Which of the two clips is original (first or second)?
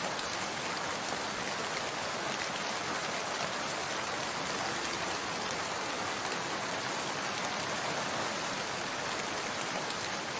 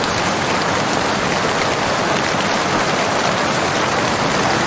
first